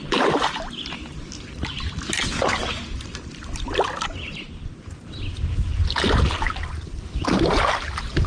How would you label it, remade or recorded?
recorded